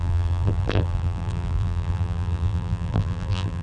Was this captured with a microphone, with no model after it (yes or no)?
no